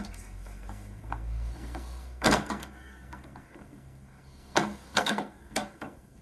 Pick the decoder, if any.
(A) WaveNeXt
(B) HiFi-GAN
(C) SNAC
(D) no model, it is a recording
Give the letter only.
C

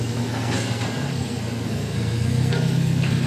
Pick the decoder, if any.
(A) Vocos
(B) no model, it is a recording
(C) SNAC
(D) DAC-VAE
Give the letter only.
C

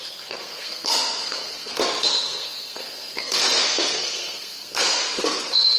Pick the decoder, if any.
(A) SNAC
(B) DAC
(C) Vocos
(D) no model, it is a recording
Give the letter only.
A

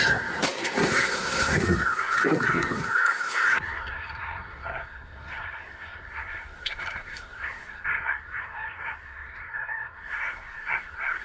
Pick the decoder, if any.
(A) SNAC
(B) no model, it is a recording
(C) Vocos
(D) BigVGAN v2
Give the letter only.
A